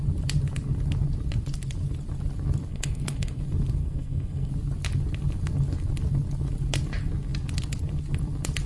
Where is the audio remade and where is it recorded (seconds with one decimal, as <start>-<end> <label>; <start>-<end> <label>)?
0.0-2.7 recorded; 2.7-3.4 remade; 3.4-3.8 recorded; 3.8-4.5 remade; 4.5-8.7 recorded